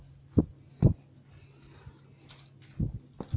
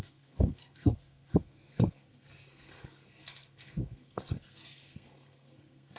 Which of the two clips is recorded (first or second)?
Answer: first